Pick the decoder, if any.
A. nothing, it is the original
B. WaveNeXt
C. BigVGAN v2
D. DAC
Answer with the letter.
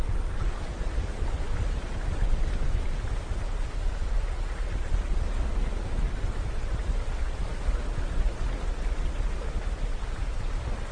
A